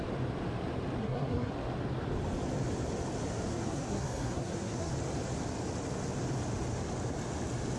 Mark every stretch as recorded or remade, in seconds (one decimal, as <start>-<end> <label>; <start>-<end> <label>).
0.0-1.0 recorded; 1.0-1.5 remade; 1.5-3.5 recorded; 3.5-4.9 remade; 4.9-7.8 recorded